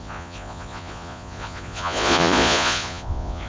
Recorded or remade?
remade